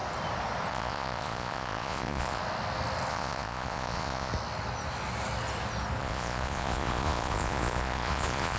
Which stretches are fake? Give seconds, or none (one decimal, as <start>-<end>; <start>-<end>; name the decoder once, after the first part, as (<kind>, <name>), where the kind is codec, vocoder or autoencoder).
0.7-2.4 (vocoder, Vocos); 3.1-4.3; 6.0-8.6

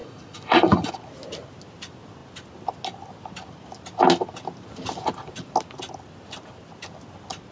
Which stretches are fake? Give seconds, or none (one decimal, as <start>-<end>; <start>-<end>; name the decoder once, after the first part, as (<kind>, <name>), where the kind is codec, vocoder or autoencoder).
0.0-0.9 (vocoder, Vocos)

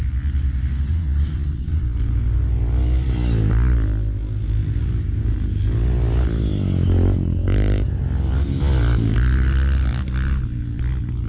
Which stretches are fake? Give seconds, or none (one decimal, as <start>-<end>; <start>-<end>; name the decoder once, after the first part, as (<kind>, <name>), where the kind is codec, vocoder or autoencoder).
0.9-1.8 (vocoder, Vocos)

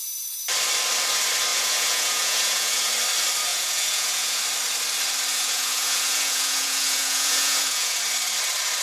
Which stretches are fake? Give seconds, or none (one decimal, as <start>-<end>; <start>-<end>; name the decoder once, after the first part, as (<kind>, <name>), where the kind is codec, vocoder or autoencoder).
1.5-2.9 (vocoder, Vocos); 3.5-4.4; 5.3-8.0

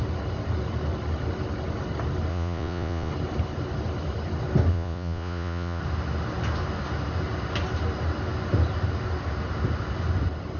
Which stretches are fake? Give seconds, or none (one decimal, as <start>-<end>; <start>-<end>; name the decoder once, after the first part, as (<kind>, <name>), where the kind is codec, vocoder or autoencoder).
2.3-3.1 (vocoder, Vocos); 4.7-5.8

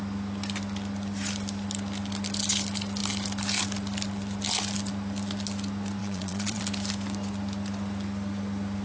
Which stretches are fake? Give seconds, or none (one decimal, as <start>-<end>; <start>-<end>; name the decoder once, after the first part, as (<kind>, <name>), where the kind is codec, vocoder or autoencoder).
6.0-6.6 (vocoder, Vocos)

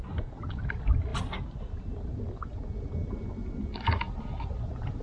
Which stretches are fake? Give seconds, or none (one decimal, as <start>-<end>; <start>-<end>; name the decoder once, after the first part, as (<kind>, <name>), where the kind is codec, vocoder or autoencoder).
none